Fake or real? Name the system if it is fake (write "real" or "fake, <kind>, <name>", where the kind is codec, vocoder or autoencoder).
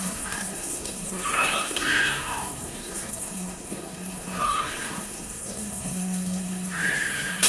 fake, codec, SNAC